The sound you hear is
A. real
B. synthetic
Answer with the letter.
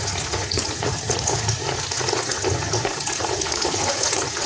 B